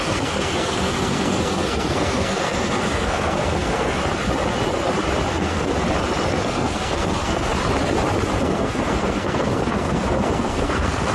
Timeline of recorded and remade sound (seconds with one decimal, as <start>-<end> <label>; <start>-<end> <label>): 0.0-4.0 remade; 4.0-5.3 recorded; 5.3-5.7 remade; 5.7-6.4 recorded; 6.4-7.5 remade; 7.5-8.4 recorded; 8.4-11.1 remade

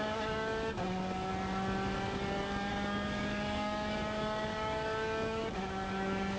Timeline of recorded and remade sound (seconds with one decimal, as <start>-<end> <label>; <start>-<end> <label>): 0.0-1.3 remade; 1.3-2.7 recorded; 2.7-6.4 remade

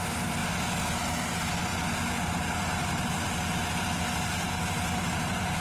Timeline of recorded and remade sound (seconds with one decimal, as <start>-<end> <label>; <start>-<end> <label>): 0.0-5.6 recorded

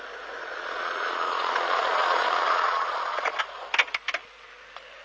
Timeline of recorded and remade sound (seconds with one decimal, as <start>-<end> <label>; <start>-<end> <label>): 0.0-0.4 recorded; 0.4-3.4 remade; 3.4-5.0 recorded

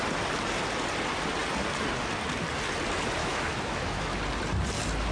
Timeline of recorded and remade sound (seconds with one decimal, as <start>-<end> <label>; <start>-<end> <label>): 0.0-3.2 recorded; 3.2-4.2 remade; 4.2-5.1 recorded

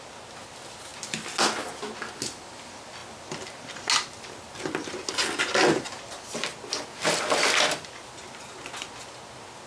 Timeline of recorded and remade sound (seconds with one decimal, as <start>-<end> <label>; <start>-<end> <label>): 0.0-9.7 recorded